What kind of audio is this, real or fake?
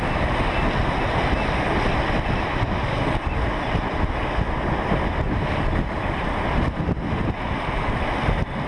real